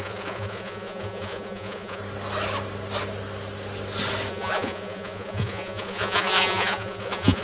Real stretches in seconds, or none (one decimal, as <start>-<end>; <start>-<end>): 2.0-4.3

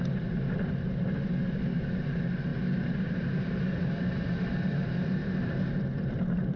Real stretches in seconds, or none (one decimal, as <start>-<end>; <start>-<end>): 0.0-2.5

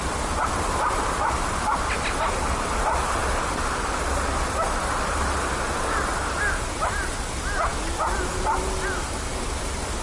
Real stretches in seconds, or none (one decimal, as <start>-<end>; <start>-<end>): 0.0-10.0

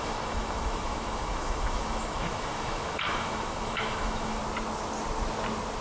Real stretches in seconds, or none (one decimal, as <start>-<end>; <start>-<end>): 4.4-5.8

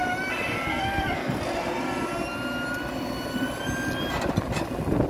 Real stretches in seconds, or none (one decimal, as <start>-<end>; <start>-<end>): 0.0-0.7; 1.4-5.1

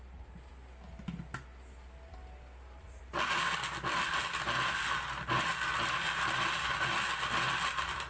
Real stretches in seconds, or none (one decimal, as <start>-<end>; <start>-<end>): 0.0-8.1